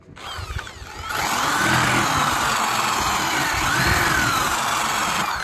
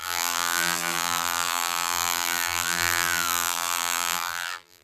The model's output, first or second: second